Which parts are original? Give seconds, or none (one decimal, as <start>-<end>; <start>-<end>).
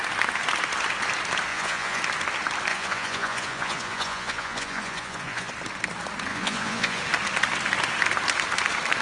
0.0-1.5; 2.0-2.7; 5.5-6.3; 7.0-9.0